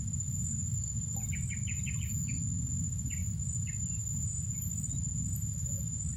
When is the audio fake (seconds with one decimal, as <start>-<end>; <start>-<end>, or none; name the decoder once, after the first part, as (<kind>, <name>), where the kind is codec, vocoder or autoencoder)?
none